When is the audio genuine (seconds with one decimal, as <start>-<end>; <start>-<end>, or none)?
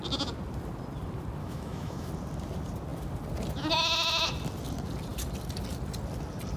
0.0-1.4; 2.1-6.6